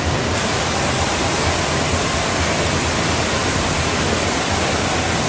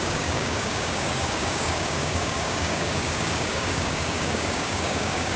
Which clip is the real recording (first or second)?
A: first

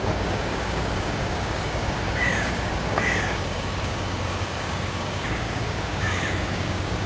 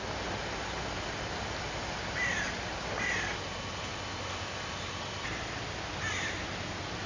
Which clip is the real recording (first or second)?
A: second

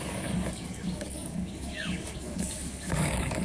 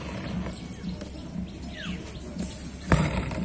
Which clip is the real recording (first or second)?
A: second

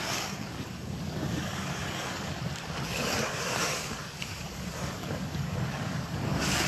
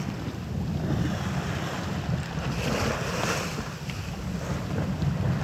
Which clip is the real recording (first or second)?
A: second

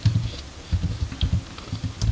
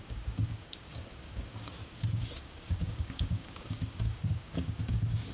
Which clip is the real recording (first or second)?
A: first